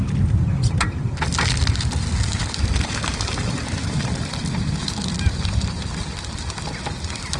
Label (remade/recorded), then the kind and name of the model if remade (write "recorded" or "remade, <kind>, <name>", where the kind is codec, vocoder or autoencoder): recorded